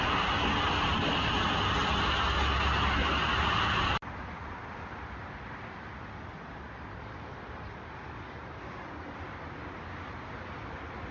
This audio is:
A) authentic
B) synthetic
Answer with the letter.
A